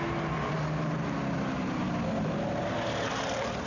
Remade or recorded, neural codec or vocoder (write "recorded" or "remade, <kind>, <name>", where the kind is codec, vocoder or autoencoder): recorded